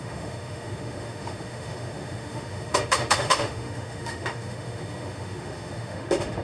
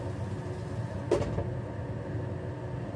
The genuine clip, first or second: second